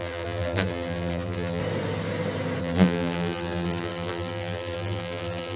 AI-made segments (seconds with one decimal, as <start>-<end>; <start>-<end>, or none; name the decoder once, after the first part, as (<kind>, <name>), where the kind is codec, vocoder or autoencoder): 0.0-1.6 (vocoder, BigVGAN v2); 2.6-5.6